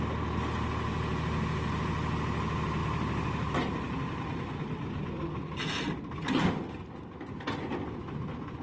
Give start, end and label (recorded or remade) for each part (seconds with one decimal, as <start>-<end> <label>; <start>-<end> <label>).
0.0-8.6 recorded